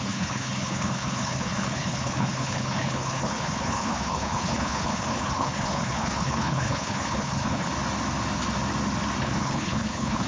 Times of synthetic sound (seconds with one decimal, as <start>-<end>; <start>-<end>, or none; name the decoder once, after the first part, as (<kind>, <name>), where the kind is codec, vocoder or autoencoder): 0.0-7.7 (codec, HILCodec); 9.2-10.3

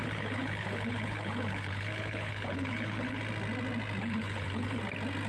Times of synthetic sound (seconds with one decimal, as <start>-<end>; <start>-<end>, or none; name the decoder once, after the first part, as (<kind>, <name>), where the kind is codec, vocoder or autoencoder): 0.0-3.2 (codec, HILCodec); 4.0-4.8

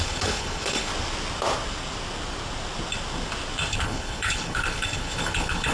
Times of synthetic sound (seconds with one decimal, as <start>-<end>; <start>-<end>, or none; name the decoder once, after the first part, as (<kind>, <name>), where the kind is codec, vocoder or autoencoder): 0.0-0.9 (codec, HILCodec); 3.7-5.7

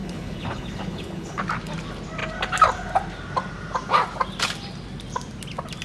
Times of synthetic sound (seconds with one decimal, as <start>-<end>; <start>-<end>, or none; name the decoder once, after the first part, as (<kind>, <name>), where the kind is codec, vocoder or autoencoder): 0.0-1.4 (codec, HILCodec)

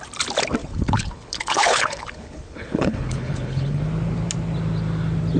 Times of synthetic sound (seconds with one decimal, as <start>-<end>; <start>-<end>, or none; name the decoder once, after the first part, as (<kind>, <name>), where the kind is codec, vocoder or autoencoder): 0.6-3.8 (codec, HILCodec)

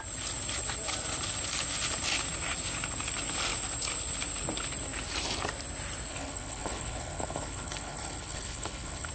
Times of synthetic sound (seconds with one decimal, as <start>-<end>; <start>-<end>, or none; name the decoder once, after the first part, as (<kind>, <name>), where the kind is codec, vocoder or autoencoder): 6.1-9.1 (codec, HILCodec)

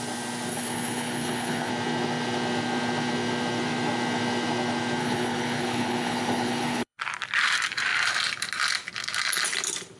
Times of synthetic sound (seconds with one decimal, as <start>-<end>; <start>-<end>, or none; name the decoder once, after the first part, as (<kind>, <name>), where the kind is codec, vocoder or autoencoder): 0.5-1.7 (codec, HILCodec); 5.0-7.0

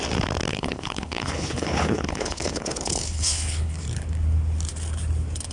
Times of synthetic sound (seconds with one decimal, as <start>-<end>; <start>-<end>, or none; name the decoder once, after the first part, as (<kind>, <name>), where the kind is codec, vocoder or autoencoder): 0.5-3.8 (codec, HILCodec)